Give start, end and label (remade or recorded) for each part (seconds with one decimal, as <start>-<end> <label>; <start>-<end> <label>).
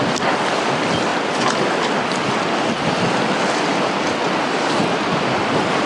0.0-5.9 recorded